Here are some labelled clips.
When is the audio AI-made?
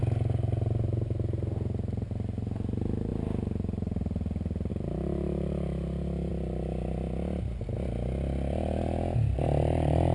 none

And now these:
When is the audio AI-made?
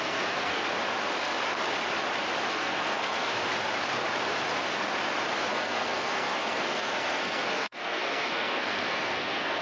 0.0-0.6; 2.5-3.3; 5.5-9.6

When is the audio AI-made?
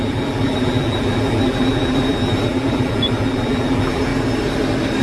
0.0-4.1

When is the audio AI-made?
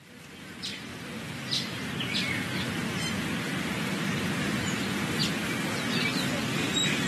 0.0-0.9; 4.4-5.2; 6.1-7.1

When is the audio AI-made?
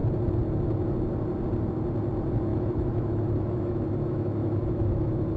2.5-5.4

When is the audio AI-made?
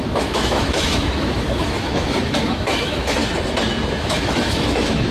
0.0-3.2; 3.9-5.1